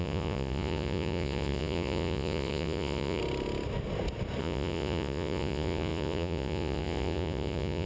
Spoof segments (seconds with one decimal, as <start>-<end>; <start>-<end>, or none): 0.0-3.2; 4.4-7.9